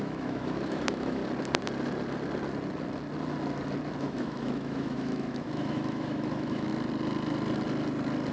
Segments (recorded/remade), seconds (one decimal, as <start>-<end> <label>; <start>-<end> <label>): 0.0-1.2 remade; 1.2-4.0 recorded; 4.0-6.7 remade; 6.7-8.3 recorded